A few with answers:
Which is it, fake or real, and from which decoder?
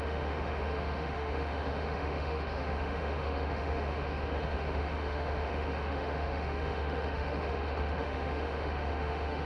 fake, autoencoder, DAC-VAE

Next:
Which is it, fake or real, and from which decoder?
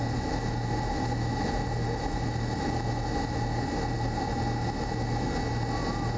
real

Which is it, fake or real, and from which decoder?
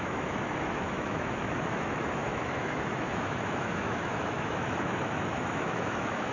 fake, autoencoder, DAC-VAE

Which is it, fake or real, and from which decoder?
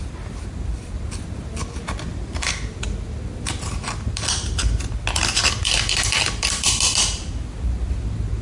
real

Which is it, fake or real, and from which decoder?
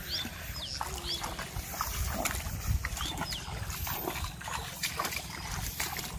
real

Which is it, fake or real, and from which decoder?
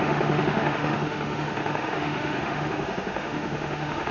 fake, autoencoder, DAC-VAE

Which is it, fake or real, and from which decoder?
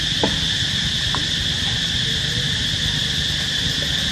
real